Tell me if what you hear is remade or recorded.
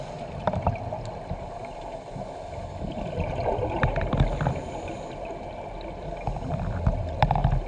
recorded